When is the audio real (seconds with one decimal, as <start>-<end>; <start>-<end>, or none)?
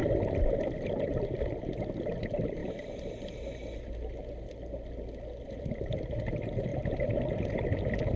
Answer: 2.6-5.6; 6.7-7.6